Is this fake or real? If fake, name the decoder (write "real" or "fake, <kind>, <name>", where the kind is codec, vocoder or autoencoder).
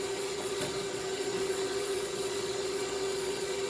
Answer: fake, vocoder, Vocos